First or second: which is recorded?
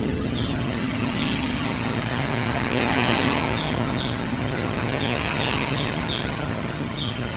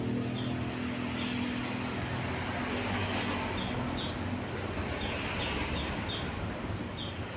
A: second